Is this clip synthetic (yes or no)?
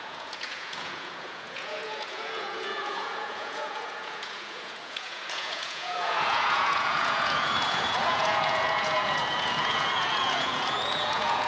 yes